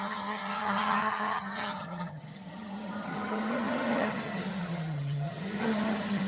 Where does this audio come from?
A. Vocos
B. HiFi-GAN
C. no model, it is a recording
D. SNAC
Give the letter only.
B